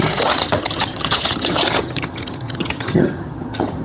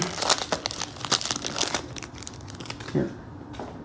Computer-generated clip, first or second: first